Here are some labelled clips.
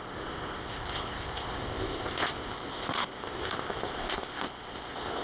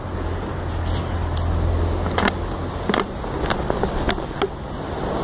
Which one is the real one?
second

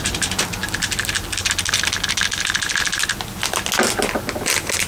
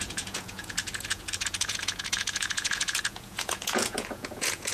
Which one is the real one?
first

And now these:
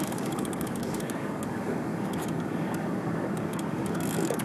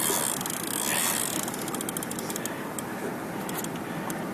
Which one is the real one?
second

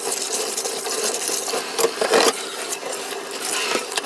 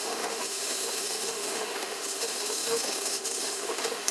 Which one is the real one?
first